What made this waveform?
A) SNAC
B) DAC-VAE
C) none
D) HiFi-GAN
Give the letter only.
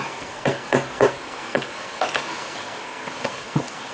A